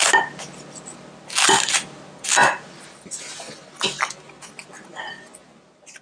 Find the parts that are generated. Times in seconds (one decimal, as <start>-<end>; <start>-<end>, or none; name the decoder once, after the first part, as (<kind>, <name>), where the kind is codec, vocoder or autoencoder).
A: none